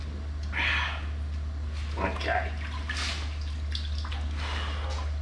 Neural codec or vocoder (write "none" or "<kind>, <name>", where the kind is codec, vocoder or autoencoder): none